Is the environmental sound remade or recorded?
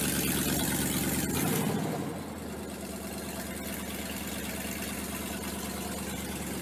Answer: recorded